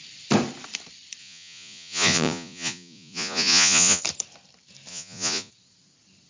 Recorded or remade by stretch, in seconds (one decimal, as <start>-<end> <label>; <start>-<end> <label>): 0.0-1.2 recorded; 1.2-4.0 remade; 4.0-4.9 recorded; 4.9-5.5 remade; 5.5-6.3 recorded

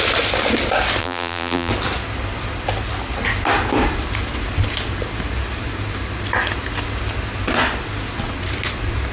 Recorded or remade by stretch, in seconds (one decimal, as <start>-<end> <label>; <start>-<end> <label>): 0.0-1.0 recorded; 1.0-1.7 remade; 1.7-9.1 recorded

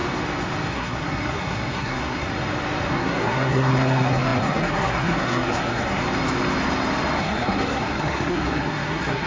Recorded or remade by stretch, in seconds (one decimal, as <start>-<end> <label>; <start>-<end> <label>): 0.0-0.7 recorded; 0.7-2.3 remade; 2.3-2.9 recorded; 2.9-6.0 remade; 6.0-7.2 recorded; 7.2-9.3 remade

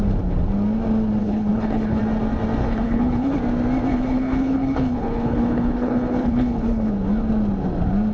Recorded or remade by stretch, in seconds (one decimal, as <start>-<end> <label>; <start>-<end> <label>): 0.0-1.2 recorded; 1.2-2.0 remade; 2.0-2.6 recorded; 2.6-3.3 remade; 3.3-3.9 recorded; 3.9-6.9 remade; 6.9-8.1 recorded

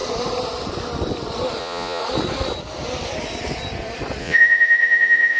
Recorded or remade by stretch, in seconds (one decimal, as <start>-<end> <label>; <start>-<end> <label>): 0.0-1.6 recorded; 1.6-2.0 remade; 2.0-4.2 recorded; 4.2-5.4 remade

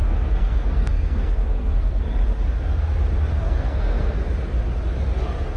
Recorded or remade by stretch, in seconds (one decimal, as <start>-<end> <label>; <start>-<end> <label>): 0.0-2.0 remade; 2.0-3.3 recorded; 3.3-4.2 remade; 4.2-5.6 recorded

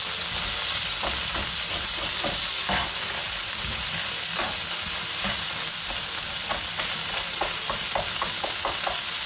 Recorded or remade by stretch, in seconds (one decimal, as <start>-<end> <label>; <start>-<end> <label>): 0.0-9.3 recorded

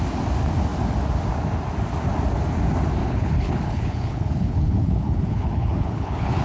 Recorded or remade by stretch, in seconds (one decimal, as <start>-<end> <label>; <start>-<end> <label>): 0.0-3.0 recorded; 3.0-6.4 remade